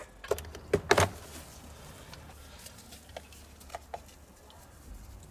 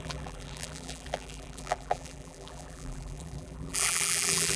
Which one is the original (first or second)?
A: first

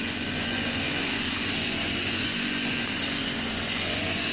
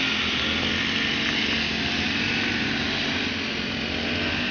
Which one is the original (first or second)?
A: second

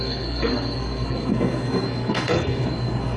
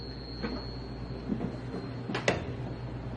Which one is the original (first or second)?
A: second